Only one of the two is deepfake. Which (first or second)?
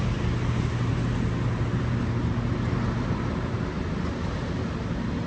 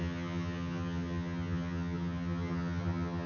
second